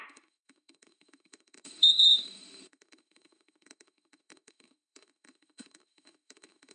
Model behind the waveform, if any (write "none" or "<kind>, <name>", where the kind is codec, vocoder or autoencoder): autoencoder, DAC-VAE